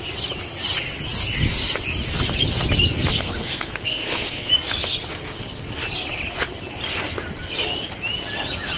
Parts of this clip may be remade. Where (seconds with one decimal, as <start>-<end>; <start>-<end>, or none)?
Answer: 3.1-4.5